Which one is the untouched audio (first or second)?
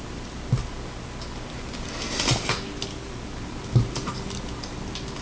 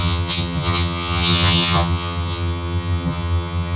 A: first